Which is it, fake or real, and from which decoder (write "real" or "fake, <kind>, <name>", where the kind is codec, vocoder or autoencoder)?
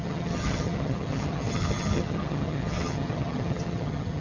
fake, vocoder, HiFi-GAN